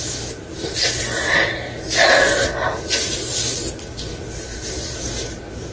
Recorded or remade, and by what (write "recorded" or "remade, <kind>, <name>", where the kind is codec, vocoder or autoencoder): recorded